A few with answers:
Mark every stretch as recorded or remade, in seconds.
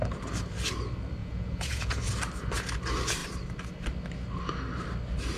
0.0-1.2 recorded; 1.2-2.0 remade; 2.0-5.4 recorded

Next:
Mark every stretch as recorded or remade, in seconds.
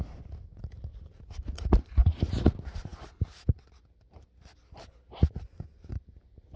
0.0-6.6 recorded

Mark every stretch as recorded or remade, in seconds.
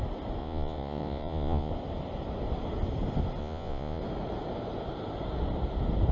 0.0-0.4 recorded; 0.4-1.7 remade; 1.7-3.4 recorded; 3.4-4.0 remade; 4.0-6.1 recorded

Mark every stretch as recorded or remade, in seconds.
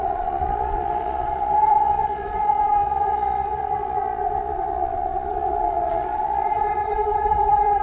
0.0-7.8 remade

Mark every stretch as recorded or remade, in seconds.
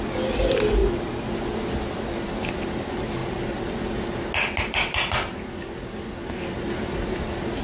0.0-7.6 recorded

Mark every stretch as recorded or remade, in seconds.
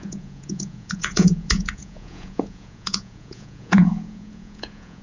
0.0-5.0 remade